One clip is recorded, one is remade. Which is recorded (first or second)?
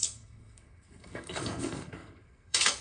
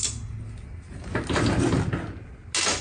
second